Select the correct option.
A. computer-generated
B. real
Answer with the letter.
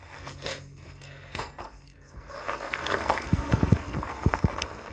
A